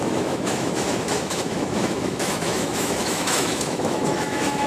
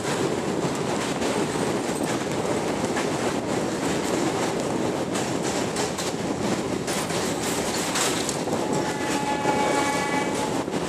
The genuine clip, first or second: second